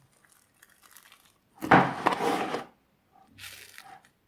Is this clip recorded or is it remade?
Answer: recorded